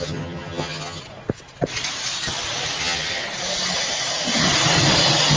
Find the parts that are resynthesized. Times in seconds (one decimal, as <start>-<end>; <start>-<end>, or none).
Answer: 0.0-1.0; 2.8-3.2